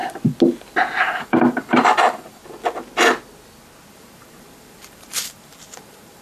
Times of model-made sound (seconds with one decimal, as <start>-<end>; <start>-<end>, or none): 1.0-2.4; 3.9-6.2